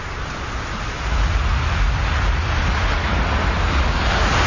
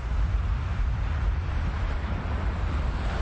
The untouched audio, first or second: first